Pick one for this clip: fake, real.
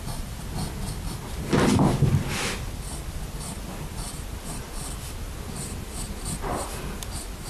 real